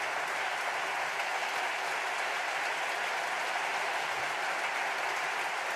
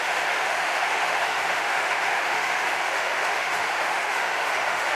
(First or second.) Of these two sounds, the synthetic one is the second